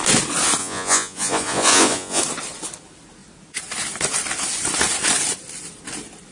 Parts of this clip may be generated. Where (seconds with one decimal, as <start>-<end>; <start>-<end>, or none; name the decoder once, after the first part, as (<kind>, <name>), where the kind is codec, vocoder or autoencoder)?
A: 0.6-2.2 (vocoder, Vocos)